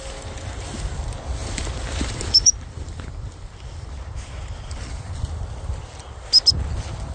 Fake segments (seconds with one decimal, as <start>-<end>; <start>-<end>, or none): 1.4-5.4